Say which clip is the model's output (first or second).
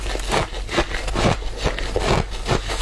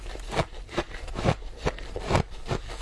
second